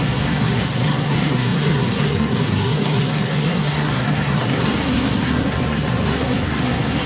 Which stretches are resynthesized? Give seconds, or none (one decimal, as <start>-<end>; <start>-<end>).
0.0-7.1

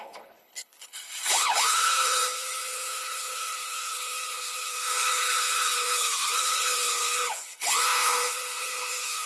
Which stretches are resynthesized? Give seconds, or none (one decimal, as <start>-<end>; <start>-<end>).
0.0-9.3